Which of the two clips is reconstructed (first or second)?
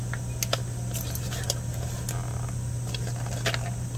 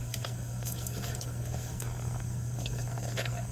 second